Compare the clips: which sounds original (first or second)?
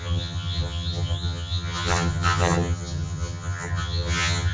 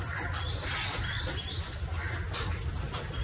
second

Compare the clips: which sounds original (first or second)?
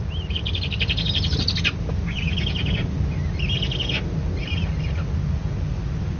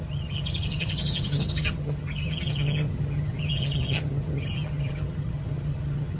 first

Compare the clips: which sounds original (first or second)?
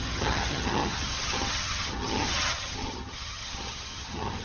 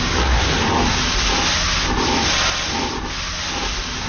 second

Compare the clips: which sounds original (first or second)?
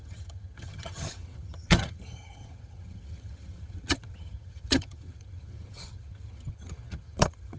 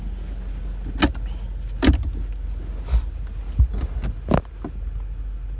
second